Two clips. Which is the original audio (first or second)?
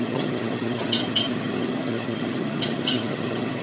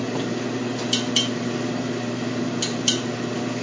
second